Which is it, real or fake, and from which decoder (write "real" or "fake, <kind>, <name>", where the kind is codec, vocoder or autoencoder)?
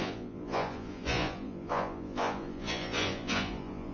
fake, vocoder, Vocos